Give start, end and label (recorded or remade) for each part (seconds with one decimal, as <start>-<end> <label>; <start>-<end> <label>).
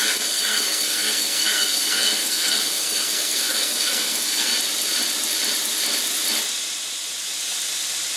0.0-4.5 remade; 4.5-8.2 recorded